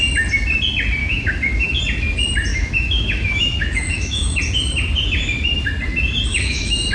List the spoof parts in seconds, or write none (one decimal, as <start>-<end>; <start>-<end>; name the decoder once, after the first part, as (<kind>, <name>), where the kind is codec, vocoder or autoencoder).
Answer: 1.0-1.8 (autoencoder, DAC-VAE); 2.5-4.4; 6.3-6.9